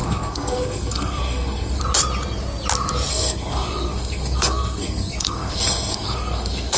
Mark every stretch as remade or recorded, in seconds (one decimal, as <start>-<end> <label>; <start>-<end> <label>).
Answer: 0.0-1.8 remade; 1.8-3.1 recorded; 3.1-6.8 remade